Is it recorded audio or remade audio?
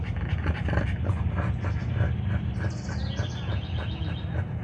recorded